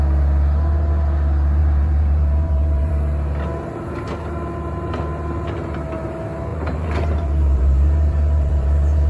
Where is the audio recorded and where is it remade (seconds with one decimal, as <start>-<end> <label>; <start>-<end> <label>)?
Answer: 0.0-1.6 recorded; 1.6-2.9 remade; 2.9-6.5 recorded; 6.5-9.1 remade